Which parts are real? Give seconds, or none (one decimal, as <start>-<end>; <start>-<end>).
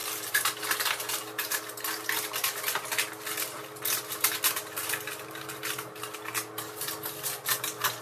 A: 0.0-8.0